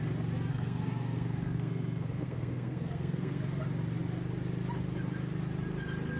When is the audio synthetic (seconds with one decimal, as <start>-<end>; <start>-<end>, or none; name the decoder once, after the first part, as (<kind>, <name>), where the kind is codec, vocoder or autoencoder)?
0.5-3.4 (codec, SNAC)